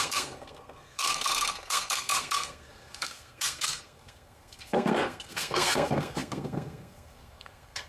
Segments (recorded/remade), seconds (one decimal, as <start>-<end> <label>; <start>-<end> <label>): 0.0-7.9 remade